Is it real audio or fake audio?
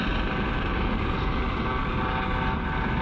real